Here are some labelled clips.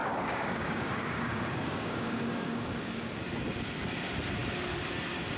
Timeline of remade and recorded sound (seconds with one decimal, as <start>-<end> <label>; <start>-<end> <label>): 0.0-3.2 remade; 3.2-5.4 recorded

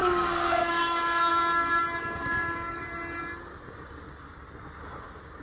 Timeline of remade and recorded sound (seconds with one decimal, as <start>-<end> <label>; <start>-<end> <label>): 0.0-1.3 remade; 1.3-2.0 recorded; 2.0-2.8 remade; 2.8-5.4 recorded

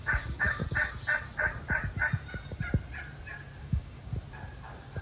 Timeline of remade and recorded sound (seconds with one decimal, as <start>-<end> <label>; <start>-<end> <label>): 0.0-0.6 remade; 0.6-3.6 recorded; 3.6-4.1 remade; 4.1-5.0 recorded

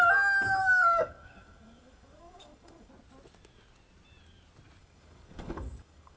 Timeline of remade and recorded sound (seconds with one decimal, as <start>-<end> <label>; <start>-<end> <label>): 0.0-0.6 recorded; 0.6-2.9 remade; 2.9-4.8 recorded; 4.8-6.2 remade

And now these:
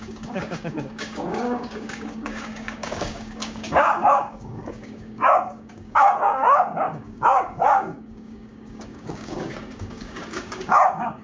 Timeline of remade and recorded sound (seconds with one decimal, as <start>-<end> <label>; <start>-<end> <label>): 0.0-11.2 remade

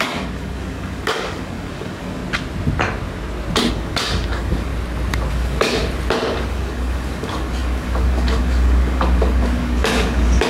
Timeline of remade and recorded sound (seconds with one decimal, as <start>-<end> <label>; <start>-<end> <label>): 0.0-2.2 remade; 2.2-3.7 recorded; 3.7-4.7 remade; 4.7-5.3 recorded; 5.3-5.8 remade; 5.8-6.3 recorded; 6.3-10.5 remade